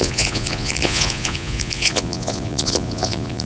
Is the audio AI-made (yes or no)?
yes